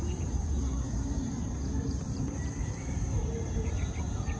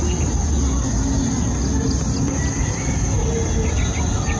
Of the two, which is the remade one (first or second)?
first